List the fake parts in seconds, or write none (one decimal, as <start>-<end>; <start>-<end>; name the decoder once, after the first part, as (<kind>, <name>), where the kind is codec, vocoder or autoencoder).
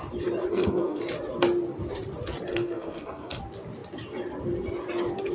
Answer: 0.5-1.0 (codec, SNAC); 2.5-3.4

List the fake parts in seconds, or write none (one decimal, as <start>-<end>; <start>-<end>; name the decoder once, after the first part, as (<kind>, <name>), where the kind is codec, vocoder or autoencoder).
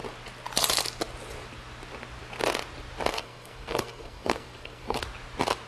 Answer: 3.1-5.0 (codec, SNAC)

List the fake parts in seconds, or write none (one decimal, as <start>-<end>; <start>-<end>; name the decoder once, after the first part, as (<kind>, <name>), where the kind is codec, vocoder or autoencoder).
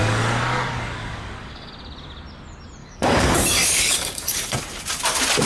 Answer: 0.0-1.7 (codec, DAC); 2.8-4.6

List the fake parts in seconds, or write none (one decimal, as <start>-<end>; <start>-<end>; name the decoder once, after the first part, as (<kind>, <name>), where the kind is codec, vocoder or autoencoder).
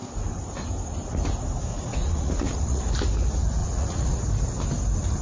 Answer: 1.7-2.8 (vocoder, Vocos); 3.6-4.2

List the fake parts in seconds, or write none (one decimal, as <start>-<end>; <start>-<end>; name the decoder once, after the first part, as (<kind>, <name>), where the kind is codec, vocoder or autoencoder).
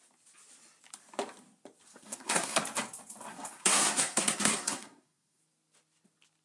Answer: 1.9-2.6 (codec, SNAC); 3.3-5.4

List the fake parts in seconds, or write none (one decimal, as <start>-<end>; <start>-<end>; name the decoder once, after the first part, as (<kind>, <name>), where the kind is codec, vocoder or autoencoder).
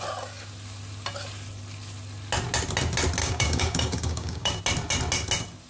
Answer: 3.2-4.6 (codec, DAC)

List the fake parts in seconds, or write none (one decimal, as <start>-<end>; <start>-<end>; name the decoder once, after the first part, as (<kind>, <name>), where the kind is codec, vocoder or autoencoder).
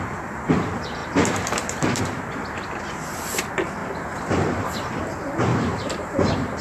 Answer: 1.0-2.0 (vocoder, BigVGAN v2); 3.8-4.8; 5.5-6.6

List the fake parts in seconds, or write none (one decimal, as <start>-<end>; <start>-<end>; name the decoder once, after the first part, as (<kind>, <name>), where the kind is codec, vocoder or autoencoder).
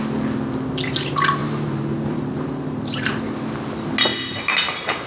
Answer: 1.4-3.3 (vocoder, BigVGAN v2)